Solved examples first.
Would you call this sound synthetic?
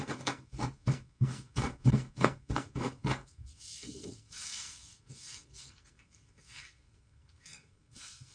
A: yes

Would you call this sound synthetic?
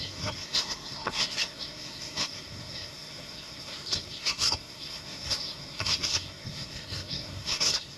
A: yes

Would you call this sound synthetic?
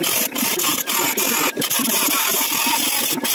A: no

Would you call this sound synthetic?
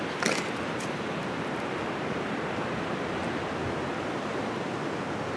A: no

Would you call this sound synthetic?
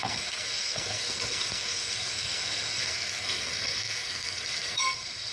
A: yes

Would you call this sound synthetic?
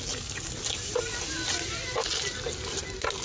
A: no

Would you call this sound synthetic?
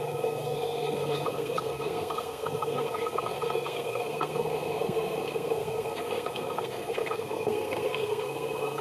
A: yes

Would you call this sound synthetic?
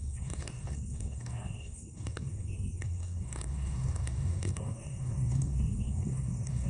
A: yes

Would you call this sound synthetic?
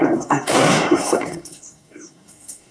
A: yes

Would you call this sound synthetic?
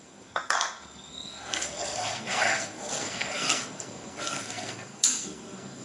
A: yes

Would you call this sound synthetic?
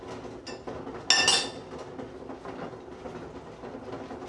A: no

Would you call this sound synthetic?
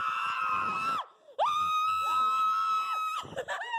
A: no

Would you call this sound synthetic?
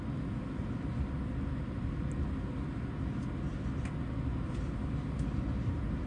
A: no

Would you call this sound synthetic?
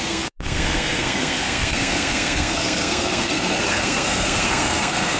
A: yes